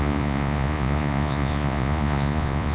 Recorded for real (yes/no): no